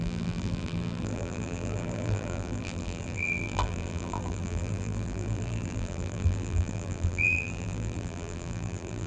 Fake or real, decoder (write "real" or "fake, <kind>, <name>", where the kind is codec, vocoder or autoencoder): fake, vocoder, BigVGAN v2